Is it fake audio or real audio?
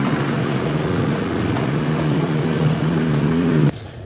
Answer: fake